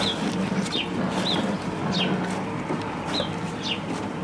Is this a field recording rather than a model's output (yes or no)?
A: yes